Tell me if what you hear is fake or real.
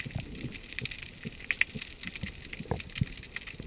real